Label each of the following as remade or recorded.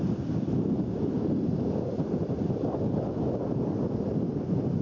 recorded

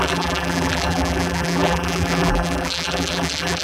remade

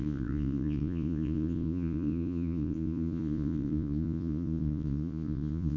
remade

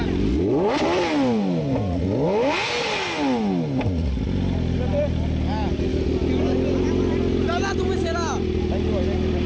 recorded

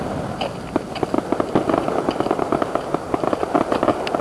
recorded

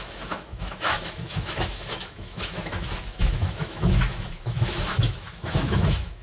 remade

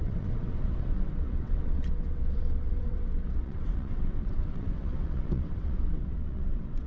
remade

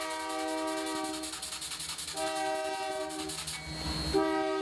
recorded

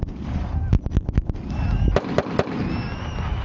recorded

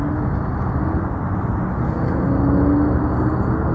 recorded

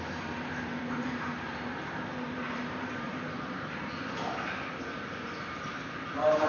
remade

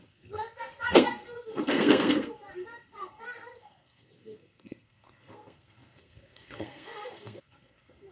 remade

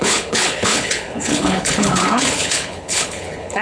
remade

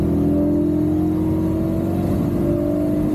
recorded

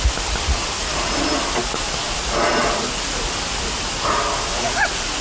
recorded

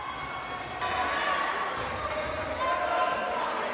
recorded